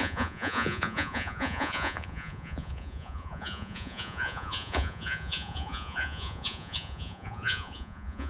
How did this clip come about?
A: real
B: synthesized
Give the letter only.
B